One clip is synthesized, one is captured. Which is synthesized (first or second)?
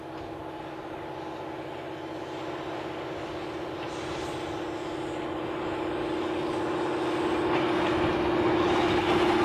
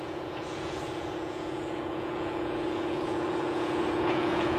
second